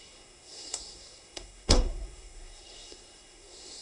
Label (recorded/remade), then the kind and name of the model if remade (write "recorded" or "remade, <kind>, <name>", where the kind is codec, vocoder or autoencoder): remade, codec, SNAC